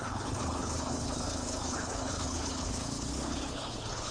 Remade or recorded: remade